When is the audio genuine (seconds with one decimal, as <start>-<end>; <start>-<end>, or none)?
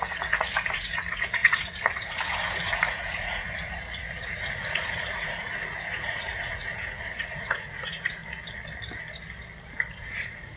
8.2-9.9